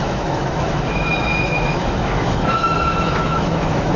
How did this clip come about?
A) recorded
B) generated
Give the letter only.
B